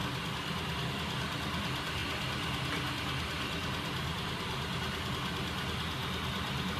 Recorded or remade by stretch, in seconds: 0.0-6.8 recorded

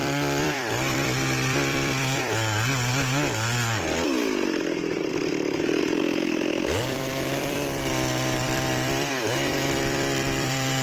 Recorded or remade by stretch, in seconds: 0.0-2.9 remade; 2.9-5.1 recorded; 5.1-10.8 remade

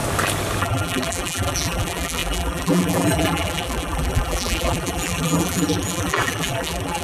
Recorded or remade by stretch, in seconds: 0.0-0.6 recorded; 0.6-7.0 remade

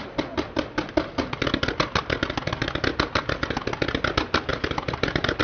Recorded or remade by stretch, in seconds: 0.0-4.5 recorded; 4.5-5.4 remade

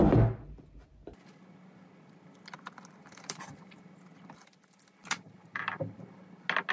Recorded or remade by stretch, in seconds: 0.0-3.0 recorded; 3.0-3.9 remade; 3.9-5.0 recorded; 5.0-6.1 remade; 6.1-6.7 recorded

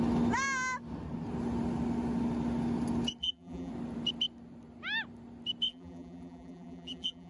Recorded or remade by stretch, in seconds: 0.0-3.2 recorded; 3.2-3.7 remade; 3.7-5.7 recorded; 5.7-7.3 remade